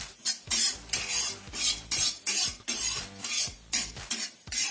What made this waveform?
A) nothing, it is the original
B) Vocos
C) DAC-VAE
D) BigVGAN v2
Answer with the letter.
A